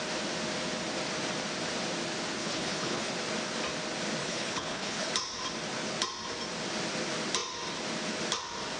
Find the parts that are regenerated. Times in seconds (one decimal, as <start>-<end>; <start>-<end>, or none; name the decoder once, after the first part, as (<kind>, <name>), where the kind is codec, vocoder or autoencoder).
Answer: 2.4-3.1 (codec, HILCodec); 4.2-5.1